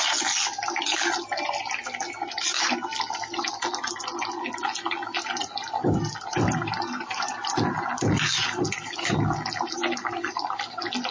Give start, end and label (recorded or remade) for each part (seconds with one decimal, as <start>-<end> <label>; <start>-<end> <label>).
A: 0.0-6.3 recorded; 6.3-7.6 remade; 7.6-11.1 recorded